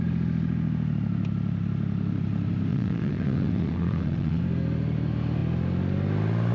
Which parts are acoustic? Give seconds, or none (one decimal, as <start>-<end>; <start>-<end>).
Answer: 0.0-2.7; 4.4-6.5